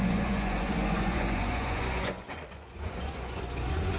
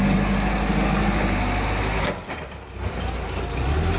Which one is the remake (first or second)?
first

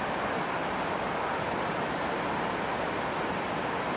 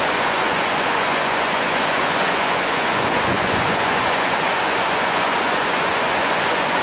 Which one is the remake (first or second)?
second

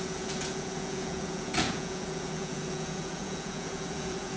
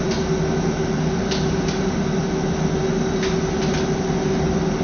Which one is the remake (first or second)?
first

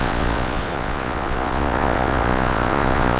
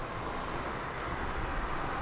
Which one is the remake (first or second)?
first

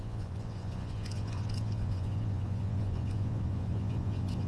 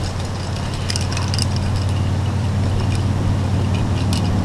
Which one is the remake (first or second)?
first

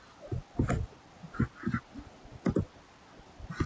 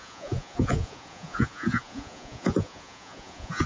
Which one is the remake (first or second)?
second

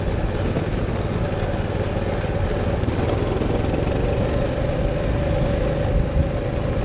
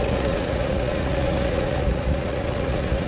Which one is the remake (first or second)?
second